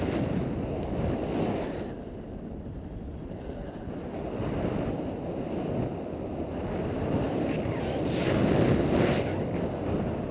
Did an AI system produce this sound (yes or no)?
no